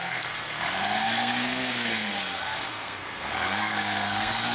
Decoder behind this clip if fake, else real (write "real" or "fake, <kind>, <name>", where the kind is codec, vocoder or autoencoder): fake, codec, SNAC